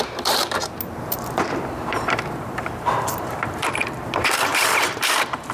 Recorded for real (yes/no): no